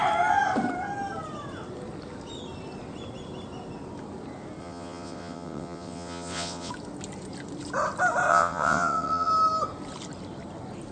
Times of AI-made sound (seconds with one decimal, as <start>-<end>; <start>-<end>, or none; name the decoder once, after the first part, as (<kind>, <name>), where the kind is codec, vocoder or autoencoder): 4.6-6.7 (vocoder, WaveNeXt); 8.3-9.3